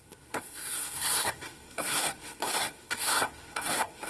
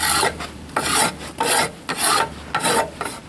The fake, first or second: first